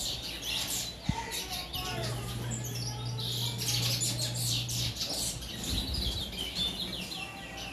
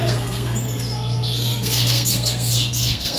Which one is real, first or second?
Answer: first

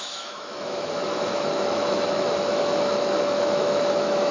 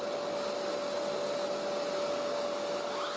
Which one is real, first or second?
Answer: second